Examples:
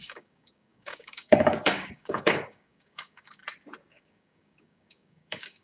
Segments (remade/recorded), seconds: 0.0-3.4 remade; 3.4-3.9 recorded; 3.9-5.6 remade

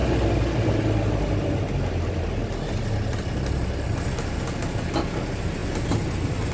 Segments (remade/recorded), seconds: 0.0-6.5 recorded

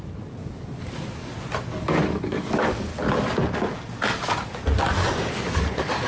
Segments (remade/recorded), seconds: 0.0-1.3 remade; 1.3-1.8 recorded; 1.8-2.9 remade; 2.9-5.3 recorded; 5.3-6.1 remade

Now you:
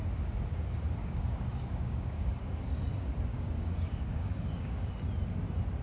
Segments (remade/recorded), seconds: 0.0-1.0 recorded; 1.0-2.6 remade; 2.6-3.3 recorded; 3.3-4.9 remade; 4.9-5.8 recorded

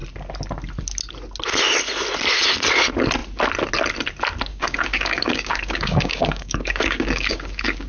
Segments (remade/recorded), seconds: 0.0-4.5 recorded; 4.5-7.9 remade

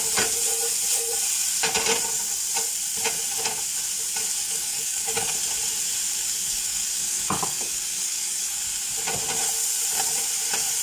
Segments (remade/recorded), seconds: 0.0-4.4 recorded; 4.4-5.4 remade; 5.4-6.2 recorded; 6.2-8.6 remade; 8.6-10.8 recorded

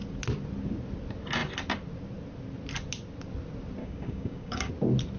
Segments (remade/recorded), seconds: 0.0-3.8 recorded; 3.8-4.7 remade; 4.7-5.2 recorded